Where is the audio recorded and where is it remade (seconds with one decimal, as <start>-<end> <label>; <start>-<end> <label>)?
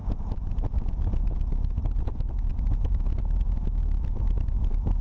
0.0-5.0 recorded